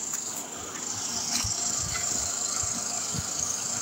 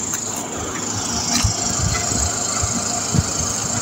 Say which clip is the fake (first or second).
first